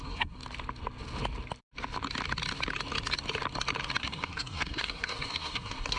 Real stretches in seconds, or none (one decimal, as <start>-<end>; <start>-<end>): 0.4-4.0